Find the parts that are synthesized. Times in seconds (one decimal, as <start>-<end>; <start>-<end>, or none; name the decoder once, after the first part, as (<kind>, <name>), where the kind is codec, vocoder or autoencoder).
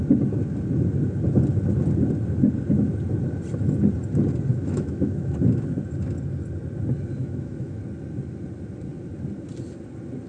4.5-5.4 (autoencoder, DAC-VAE); 7.2-7.8